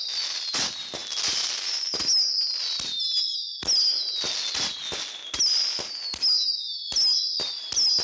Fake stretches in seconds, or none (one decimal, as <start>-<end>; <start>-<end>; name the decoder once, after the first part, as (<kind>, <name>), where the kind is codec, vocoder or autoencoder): none